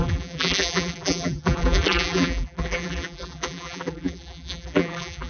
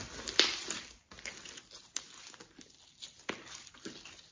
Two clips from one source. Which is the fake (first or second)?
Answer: first